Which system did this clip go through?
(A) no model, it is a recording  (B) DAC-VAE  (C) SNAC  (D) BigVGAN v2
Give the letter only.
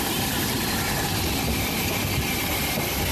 A